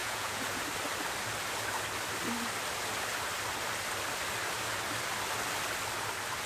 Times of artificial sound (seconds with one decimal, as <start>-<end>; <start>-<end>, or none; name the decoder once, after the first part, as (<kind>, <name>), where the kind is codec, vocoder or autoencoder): 0.0-0.6 (vocoder, Vocos)